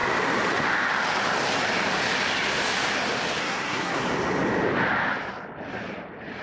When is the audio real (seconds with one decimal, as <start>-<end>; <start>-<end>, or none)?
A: 0.0-3.4; 4.0-6.4